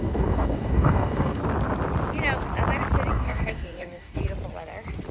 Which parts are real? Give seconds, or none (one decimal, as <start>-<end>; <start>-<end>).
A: 1.4-3.1; 4.2-5.1